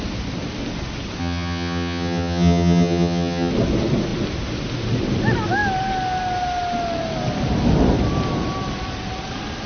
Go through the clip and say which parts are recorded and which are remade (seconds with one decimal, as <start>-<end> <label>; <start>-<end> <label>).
0.0-1.2 recorded; 1.2-3.5 remade; 3.5-9.7 recorded